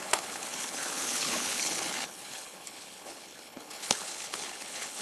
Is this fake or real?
fake